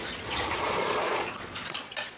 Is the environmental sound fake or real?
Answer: fake